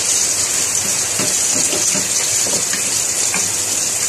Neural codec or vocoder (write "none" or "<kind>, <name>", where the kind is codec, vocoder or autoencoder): none